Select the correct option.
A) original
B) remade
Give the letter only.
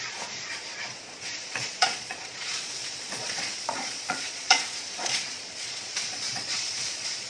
B